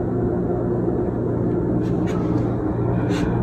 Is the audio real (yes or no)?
yes